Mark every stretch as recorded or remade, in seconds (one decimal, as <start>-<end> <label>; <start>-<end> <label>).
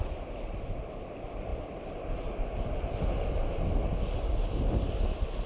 0.0-5.5 recorded